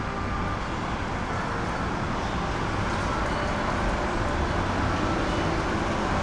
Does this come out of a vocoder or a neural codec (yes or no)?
no